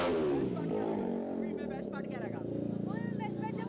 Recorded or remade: recorded